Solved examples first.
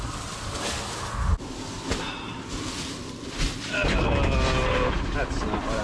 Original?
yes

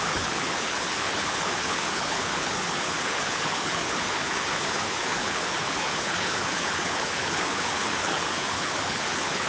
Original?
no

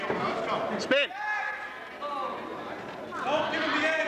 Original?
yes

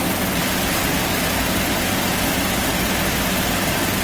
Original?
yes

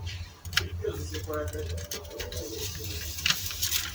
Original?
no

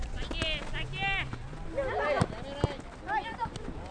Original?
yes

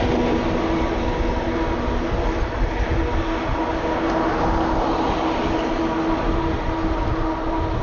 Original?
yes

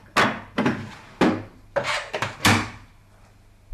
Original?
yes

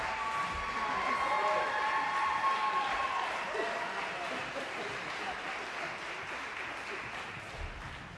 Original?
yes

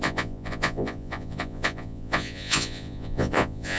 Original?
no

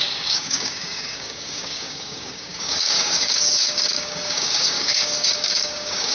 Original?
no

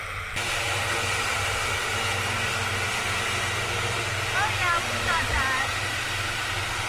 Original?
yes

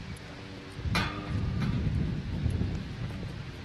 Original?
yes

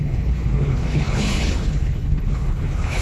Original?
no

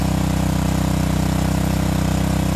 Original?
yes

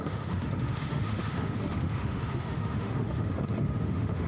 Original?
no